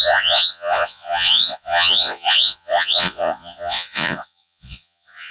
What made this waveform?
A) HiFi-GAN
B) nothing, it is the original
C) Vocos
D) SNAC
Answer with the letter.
C